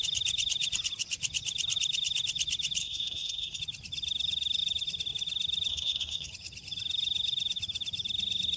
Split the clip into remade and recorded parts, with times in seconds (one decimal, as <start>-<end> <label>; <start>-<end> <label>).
0.0-2.8 recorded; 2.8-3.6 remade; 3.6-5.7 recorded; 5.7-6.3 remade; 6.3-8.6 recorded